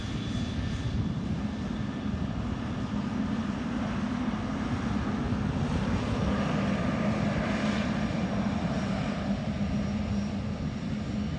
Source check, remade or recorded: recorded